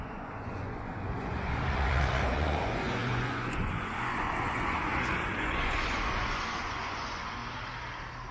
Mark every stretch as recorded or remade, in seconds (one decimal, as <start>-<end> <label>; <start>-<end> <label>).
0.0-7.4 remade; 7.4-8.3 recorded